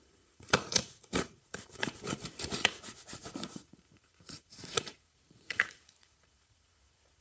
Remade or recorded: remade